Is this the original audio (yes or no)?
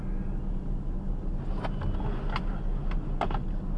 yes